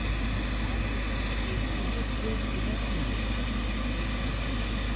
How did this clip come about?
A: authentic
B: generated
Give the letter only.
A